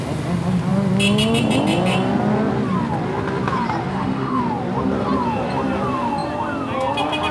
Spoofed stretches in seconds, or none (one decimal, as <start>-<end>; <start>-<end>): 3.9-4.4